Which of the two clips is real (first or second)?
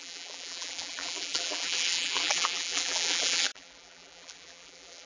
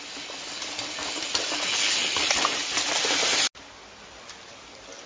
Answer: second